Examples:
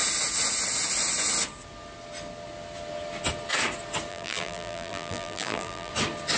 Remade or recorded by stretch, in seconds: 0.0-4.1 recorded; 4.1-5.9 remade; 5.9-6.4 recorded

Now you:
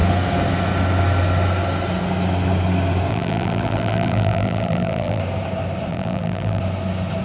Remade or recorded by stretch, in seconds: 0.0-3.1 recorded; 3.1-5.2 remade; 5.2-5.9 recorded; 5.9-6.6 remade; 6.6-7.2 recorded